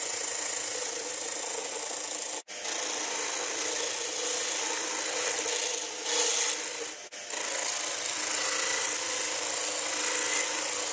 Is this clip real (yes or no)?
yes